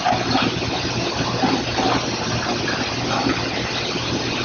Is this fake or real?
fake